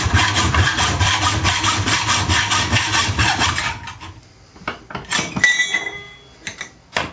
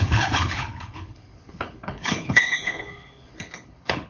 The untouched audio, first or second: first